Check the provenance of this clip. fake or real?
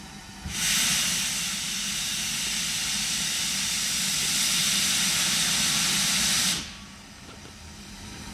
real